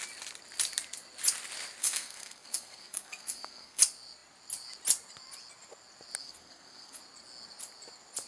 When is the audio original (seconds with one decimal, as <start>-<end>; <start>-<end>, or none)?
0.0-1.8; 3.8-6.2; 7.0-8.3